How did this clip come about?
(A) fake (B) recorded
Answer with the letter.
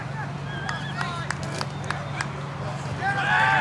B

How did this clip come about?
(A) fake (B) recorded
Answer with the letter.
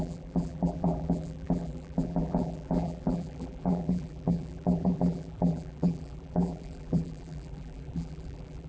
A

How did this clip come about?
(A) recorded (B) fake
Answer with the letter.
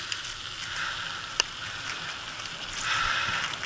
A